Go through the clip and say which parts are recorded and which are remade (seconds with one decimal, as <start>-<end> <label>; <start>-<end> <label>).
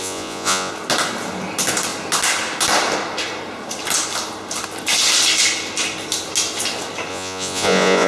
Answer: 0.0-0.7 remade; 0.7-7.1 recorded; 7.1-8.1 remade